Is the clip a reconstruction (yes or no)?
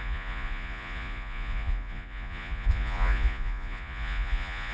yes